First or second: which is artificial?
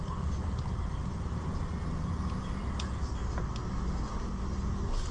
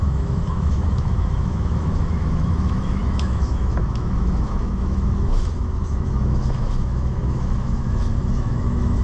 second